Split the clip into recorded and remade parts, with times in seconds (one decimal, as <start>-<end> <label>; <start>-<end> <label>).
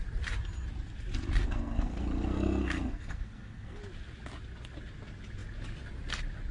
0.0-1.4 recorded; 1.4-3.8 remade; 3.8-6.5 recorded